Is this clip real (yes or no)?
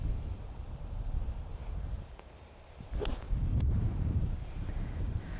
no